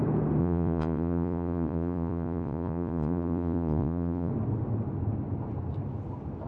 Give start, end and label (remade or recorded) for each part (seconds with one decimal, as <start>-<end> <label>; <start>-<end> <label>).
0.0-0.4 recorded; 0.4-4.3 remade; 4.3-6.5 recorded